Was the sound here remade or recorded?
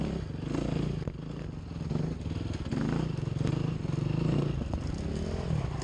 recorded